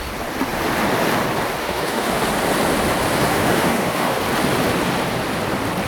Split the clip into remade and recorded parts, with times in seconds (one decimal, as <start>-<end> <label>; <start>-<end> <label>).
0.0-1.6 recorded; 1.6-2.1 remade; 2.1-3.3 recorded; 3.3-4.2 remade; 4.2-5.9 recorded